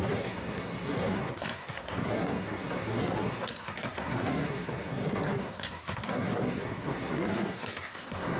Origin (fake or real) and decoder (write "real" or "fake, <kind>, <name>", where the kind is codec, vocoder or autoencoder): fake, codec, SNAC